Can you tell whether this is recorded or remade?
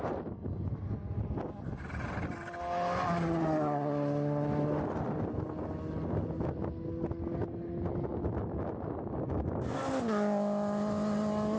recorded